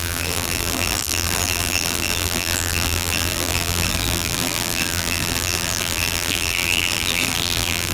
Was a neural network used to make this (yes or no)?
yes